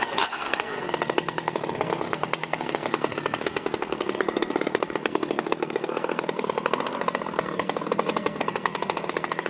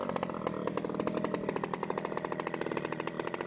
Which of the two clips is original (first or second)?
second